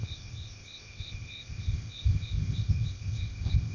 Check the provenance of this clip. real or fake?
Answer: fake